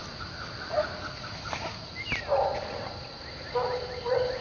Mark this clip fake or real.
real